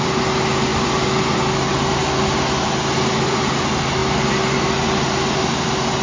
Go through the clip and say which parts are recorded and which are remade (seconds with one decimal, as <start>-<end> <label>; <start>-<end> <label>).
0.0-6.0 recorded